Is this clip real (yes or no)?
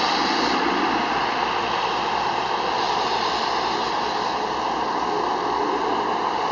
yes